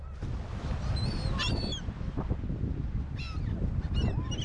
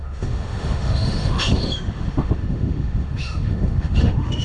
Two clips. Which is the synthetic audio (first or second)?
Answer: second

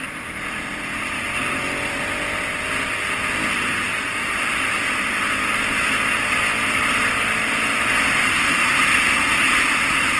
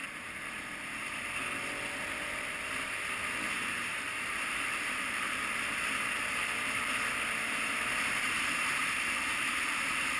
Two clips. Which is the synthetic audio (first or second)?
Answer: second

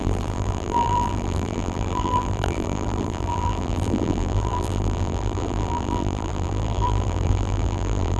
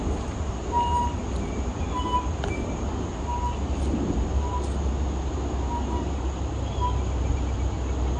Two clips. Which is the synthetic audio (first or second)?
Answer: first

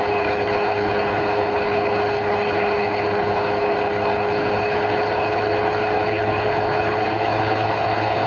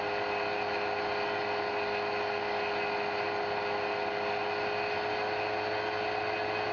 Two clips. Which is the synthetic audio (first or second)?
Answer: first